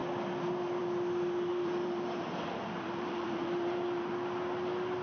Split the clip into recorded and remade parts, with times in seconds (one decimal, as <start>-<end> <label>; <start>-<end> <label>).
0.0-1.5 recorded; 1.5-4.1 remade; 4.1-5.0 recorded